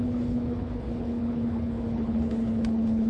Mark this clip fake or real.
fake